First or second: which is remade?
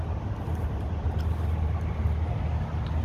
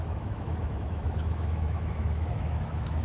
second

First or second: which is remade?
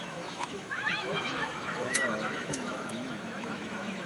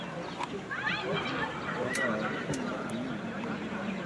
first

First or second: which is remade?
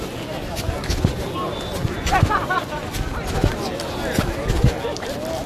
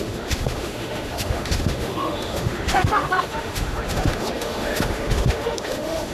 second